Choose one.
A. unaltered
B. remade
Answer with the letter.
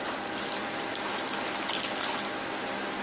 A